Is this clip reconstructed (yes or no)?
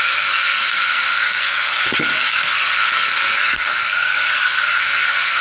yes